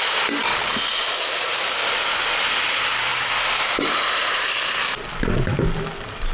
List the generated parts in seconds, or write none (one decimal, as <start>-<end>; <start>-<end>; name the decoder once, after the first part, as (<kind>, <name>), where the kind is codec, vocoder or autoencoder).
3.1-4.4 (vocoder, BigVGAN v2)